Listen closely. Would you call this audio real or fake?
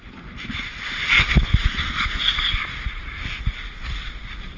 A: real